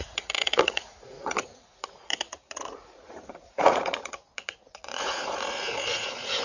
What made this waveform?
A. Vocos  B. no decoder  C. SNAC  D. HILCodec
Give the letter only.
A